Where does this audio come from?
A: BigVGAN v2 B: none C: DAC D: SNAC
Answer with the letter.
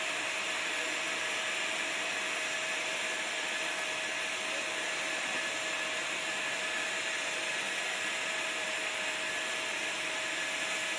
A